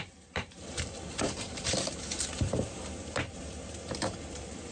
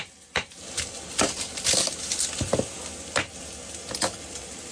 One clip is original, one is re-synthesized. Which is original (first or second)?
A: second